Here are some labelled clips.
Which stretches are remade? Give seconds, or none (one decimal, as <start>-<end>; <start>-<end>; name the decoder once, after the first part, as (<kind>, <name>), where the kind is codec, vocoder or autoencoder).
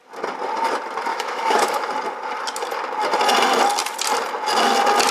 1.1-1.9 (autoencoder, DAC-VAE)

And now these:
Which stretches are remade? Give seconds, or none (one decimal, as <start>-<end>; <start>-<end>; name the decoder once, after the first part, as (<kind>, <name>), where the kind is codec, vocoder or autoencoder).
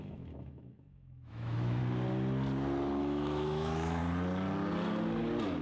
0.0-1.8 (autoencoder, DAC-VAE); 3.0-4.0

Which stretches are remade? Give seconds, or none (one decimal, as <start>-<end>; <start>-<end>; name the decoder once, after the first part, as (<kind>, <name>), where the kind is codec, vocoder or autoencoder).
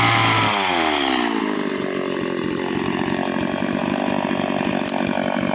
none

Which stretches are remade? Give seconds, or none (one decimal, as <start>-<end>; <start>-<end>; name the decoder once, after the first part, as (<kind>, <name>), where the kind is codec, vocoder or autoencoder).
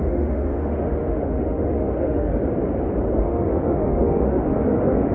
0.0-2.3 (autoencoder, DAC-VAE); 3.2-5.1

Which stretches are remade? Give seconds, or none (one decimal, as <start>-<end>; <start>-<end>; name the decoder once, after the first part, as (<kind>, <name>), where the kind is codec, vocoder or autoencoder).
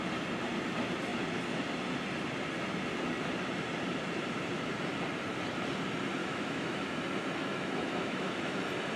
6.2-7.0 (autoencoder, DAC-VAE); 7.4-8.6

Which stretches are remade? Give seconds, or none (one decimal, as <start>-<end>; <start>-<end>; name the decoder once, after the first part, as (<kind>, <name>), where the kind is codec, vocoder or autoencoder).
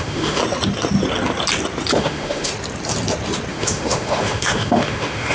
0.0-0.4 (autoencoder, DAC-VAE); 1.9-2.5; 3.5-5.3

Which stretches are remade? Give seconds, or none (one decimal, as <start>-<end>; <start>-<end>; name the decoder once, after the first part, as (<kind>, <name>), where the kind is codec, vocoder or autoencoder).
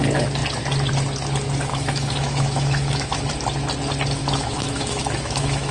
1.7-3.3 (autoencoder, DAC-VAE); 4.2-5.7